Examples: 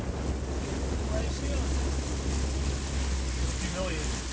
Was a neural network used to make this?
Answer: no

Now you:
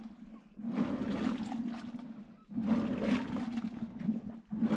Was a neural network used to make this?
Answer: no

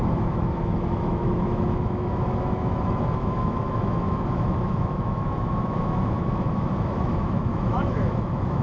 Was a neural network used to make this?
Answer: yes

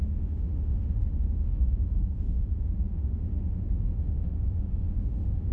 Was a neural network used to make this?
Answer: yes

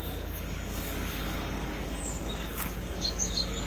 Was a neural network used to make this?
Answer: yes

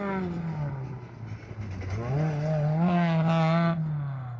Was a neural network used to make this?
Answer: no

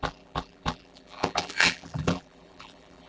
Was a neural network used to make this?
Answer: yes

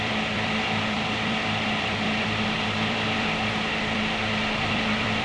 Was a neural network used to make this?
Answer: yes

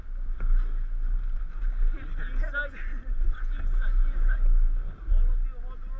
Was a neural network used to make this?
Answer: no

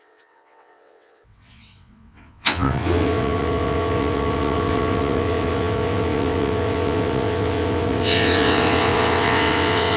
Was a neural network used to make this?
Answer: yes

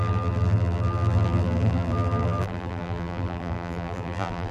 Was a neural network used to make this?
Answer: yes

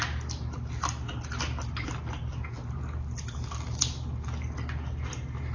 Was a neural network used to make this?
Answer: no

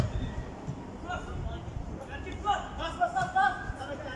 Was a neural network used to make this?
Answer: no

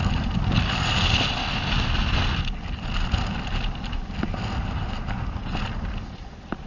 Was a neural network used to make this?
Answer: no